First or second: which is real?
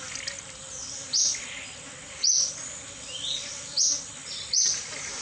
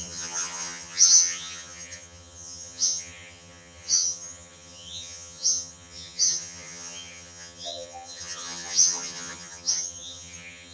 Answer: first